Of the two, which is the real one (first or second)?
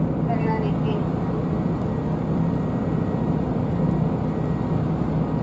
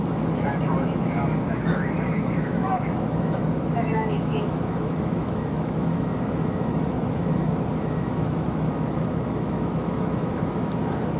first